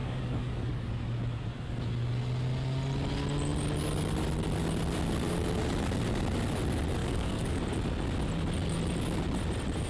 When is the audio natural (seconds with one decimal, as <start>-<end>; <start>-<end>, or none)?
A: 0.9-7.0; 7.6-9.9